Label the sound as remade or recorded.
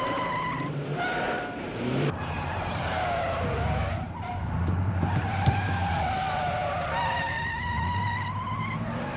remade